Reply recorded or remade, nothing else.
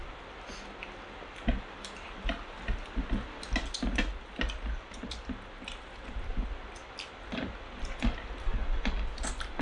recorded